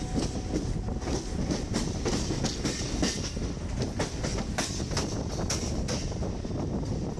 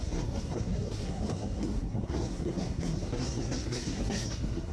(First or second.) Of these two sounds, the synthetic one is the second